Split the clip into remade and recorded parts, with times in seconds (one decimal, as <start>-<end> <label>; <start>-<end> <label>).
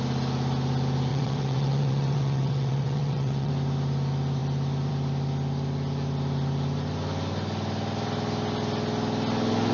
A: 0.0-1.1 recorded; 1.1-3.5 remade; 3.5-9.7 recorded